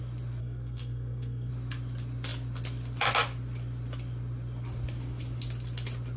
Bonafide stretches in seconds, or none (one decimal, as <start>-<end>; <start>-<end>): 0.0-0.4; 1.5-6.2